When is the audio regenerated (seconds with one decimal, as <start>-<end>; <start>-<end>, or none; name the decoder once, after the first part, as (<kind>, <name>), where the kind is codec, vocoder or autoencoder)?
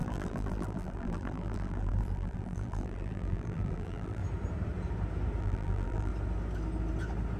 0.0-4.2 (vocoder, BigVGAN v2); 5.4-6.1